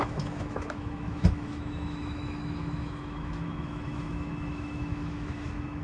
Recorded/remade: remade